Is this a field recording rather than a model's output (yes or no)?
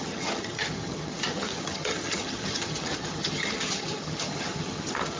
no